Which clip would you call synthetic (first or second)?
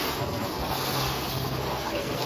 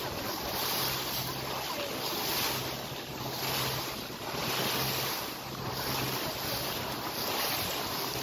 first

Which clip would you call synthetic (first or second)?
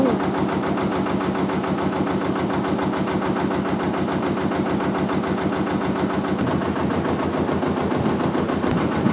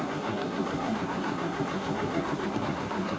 second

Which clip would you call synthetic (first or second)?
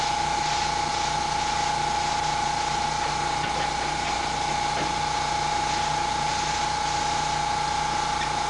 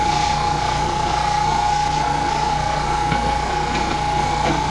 second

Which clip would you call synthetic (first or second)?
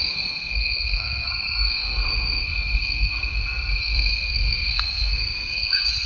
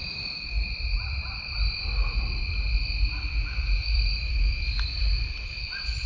first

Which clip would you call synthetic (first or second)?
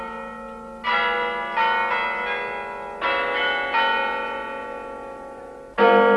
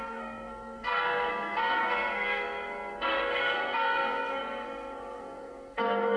second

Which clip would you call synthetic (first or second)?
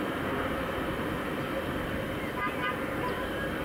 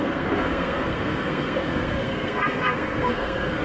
second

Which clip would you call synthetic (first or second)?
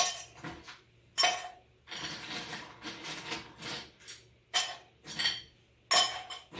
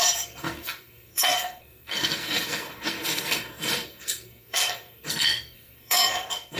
second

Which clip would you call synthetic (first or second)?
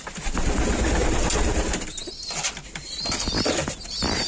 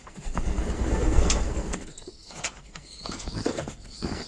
second